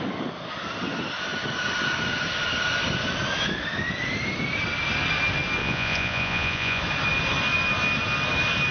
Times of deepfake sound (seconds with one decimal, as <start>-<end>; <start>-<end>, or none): 5.6-6.8